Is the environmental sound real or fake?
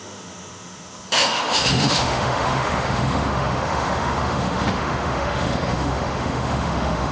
fake